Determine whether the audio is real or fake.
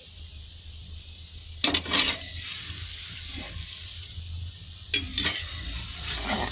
real